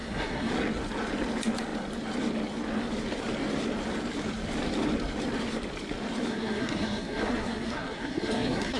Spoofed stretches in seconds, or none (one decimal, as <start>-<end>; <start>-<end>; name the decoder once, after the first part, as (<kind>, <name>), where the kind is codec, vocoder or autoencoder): 0.0-0.5 (codec, SNAC); 6.3-8.8